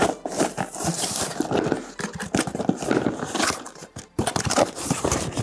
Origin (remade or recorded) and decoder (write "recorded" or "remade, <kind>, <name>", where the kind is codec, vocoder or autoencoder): recorded